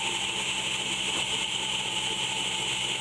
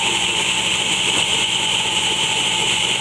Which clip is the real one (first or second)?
first